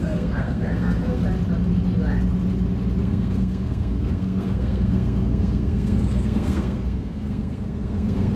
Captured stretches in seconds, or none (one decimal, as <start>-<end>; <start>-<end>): 1.2-3.0